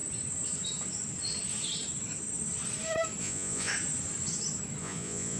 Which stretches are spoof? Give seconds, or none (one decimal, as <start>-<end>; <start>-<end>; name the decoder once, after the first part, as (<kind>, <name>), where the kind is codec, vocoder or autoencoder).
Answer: 3.2-3.7 (vocoder, Vocos); 4.8-5.4